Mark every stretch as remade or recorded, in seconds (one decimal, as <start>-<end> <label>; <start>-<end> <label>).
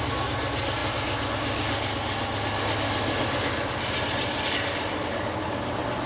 0.0-6.1 recorded